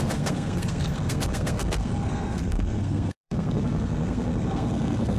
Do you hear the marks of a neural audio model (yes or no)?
yes